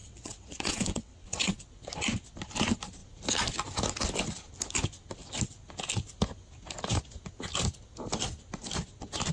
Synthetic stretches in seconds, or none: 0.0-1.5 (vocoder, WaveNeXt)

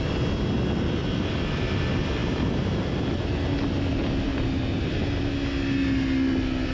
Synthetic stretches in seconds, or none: 1.0-1.8 (vocoder, BigVGAN v2); 2.2-3.1; 4.3-5.2

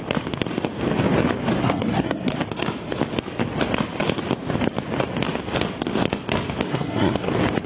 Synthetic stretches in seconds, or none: 1.6-2.4 (codec, SNAC); 6.7-7.3

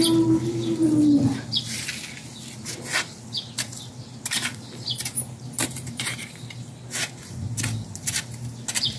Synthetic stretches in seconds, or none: 5.6-6.8 (vocoder, BigVGAN v2)

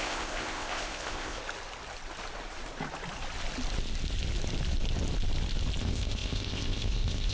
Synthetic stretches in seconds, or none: 0.0-1.4 (codec, ZipCodec); 5.8-7.3

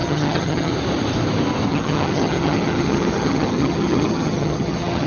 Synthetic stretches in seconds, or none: 0.0-0.7 (vocoder, HiFi-GAN); 1.7-5.1

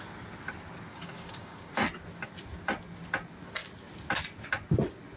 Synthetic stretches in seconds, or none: 0.9-1.7 (codec, DAC)